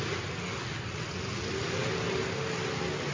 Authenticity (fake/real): real